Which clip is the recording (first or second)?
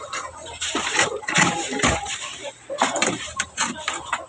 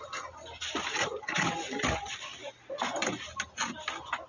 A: second